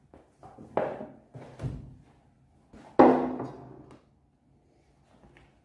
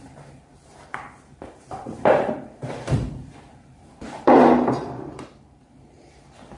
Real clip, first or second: first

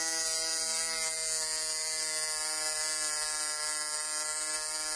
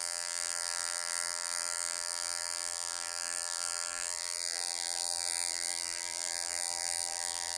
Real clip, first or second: first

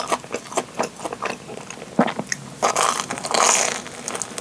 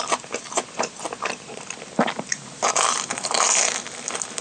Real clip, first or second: first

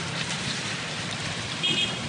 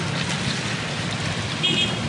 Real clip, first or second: second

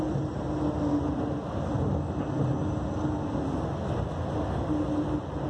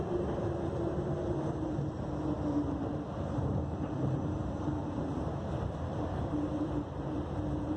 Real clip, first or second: first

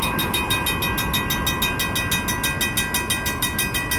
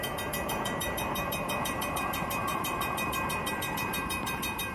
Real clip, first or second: first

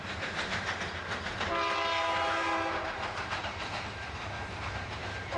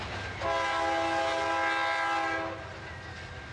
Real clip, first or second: second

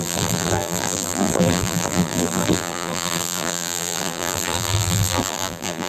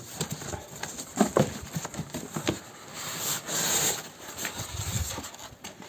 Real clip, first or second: second